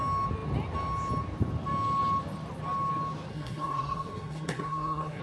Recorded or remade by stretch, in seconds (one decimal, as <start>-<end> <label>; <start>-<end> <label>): 0.0-3.3 recorded; 3.3-5.2 remade